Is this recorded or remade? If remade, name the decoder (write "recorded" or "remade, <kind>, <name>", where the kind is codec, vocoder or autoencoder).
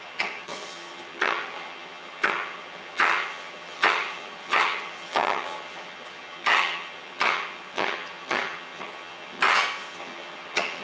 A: remade, vocoder, HiFi-GAN